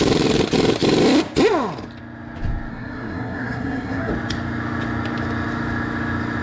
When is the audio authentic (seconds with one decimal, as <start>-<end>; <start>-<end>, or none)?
0.0-2.7; 4.1-6.4